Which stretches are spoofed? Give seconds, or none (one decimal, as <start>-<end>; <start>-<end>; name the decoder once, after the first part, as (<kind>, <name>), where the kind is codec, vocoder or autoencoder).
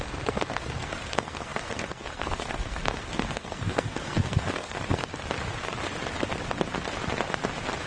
0.0-5.1 (codec, SNAC)